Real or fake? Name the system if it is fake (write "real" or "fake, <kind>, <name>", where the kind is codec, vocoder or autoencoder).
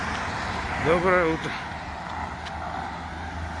real